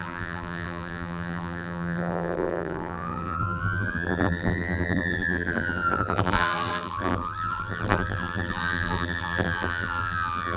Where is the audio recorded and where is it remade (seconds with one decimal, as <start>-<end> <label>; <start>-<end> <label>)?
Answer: 0.0-10.6 remade